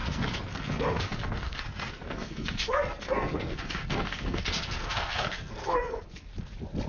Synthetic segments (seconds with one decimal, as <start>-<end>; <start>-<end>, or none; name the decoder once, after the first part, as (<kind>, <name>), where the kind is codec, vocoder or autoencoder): 0.0-6.3 (codec, SNAC)